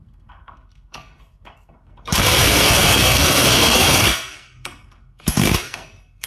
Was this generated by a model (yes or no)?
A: yes